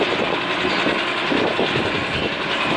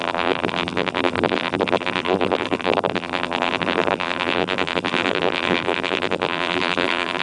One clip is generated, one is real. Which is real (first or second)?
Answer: first